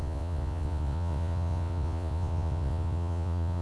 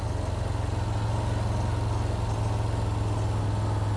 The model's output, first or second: first